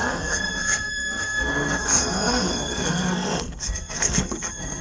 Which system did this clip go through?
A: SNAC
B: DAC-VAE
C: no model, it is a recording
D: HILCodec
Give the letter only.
A